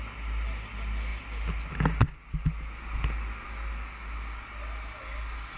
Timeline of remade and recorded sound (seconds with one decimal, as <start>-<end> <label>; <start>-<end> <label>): 0.0-5.6 recorded